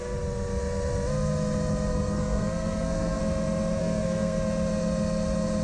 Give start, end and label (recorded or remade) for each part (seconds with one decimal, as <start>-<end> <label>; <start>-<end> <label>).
0.0-1.9 recorded; 1.9-3.2 remade; 3.2-3.8 recorded; 3.8-4.4 remade; 4.4-5.6 recorded

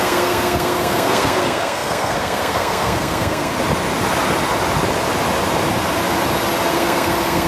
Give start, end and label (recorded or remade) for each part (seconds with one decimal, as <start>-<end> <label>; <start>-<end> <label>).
0.0-3.5 remade; 3.5-6.7 recorded; 6.7-7.5 remade

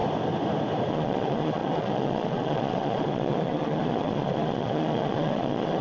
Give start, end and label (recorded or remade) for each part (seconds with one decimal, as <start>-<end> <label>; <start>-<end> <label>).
0.0-0.9 recorded; 0.9-5.8 remade